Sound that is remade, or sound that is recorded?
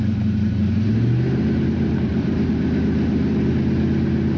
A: recorded